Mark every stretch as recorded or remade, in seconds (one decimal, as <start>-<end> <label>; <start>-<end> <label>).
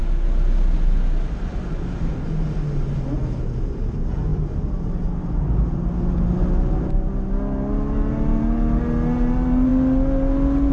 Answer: 0.0-10.7 recorded